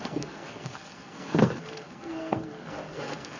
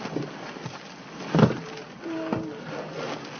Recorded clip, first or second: second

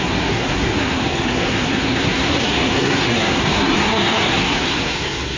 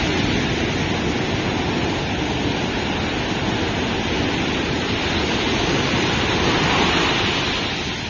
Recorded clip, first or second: second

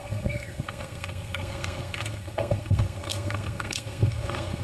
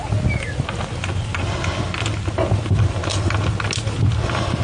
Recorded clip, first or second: second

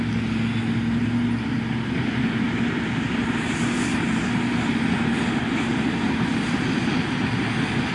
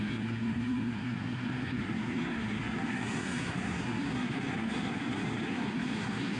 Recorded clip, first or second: first